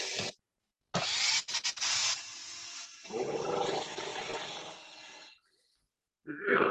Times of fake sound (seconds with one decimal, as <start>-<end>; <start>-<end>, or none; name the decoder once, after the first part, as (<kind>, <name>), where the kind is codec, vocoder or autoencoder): none